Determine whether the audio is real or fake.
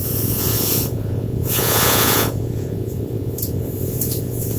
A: fake